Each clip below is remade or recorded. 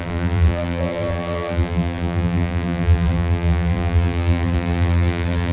remade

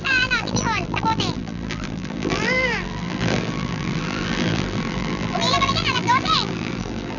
remade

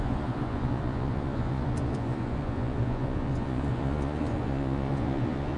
remade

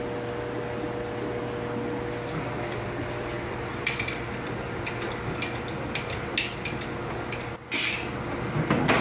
recorded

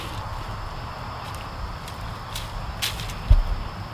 recorded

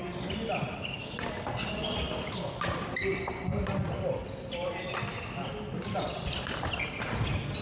recorded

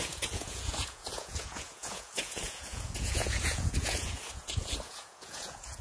remade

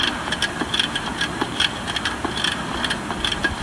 recorded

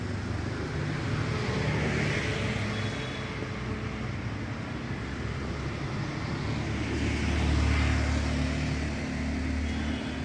recorded